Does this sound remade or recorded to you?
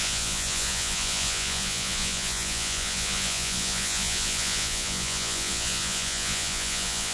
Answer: remade